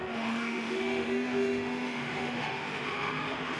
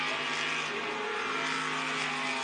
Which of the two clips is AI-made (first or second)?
first